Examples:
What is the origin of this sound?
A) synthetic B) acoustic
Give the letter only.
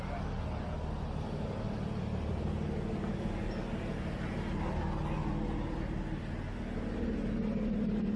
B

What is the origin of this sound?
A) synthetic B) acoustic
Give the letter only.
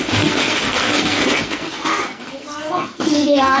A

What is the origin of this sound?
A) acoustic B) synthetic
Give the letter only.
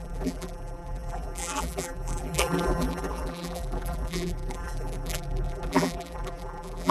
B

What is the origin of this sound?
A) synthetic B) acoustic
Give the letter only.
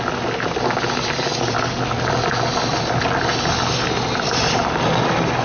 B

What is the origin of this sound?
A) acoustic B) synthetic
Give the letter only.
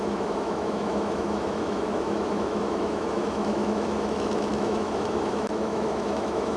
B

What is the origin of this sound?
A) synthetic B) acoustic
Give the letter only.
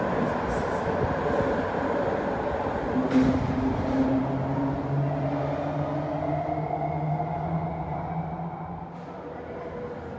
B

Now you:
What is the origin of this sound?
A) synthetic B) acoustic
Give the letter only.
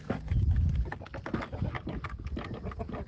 B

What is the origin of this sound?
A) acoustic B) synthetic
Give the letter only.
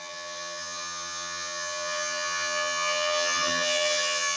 B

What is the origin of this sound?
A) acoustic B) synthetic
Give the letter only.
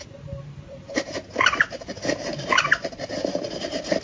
B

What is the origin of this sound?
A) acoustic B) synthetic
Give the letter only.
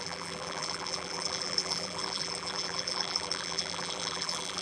B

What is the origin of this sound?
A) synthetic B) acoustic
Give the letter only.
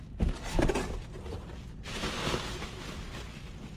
A